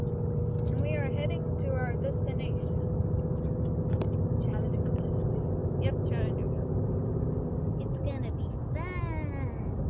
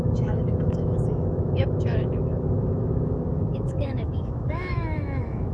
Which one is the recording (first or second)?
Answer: first